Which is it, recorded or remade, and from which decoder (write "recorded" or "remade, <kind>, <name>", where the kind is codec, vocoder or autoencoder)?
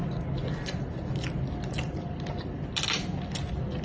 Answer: recorded